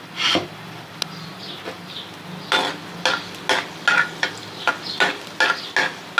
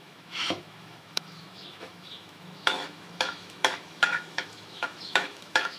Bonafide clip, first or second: first